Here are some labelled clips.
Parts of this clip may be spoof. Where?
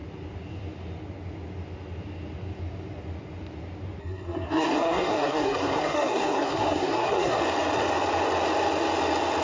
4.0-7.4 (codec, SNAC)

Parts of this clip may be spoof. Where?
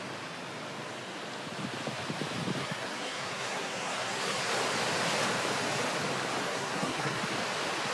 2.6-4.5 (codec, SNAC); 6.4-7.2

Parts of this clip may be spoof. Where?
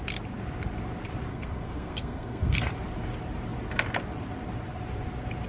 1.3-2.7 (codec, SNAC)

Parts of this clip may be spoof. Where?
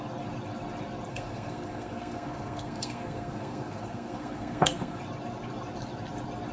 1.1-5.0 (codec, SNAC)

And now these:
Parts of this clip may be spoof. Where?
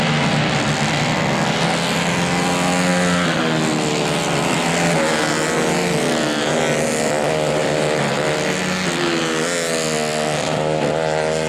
none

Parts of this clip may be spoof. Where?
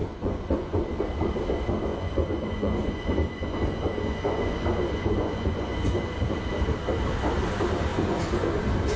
0.0-0.8 (vocoder, Vocos); 1.9-6.2; 7.9-8.6